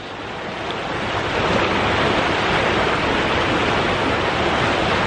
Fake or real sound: real